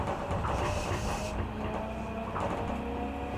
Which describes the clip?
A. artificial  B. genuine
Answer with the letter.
B